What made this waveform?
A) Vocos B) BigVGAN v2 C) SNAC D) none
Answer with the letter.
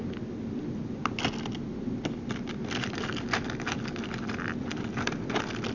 D